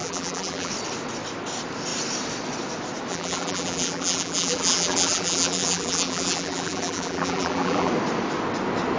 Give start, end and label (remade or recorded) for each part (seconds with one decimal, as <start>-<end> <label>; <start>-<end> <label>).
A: 0.0-0.7 remade; 0.7-3.1 recorded; 3.1-7.9 remade; 7.9-9.0 recorded